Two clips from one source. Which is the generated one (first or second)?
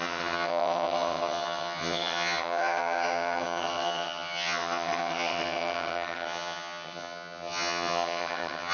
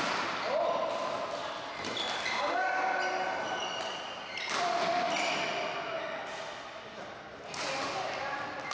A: first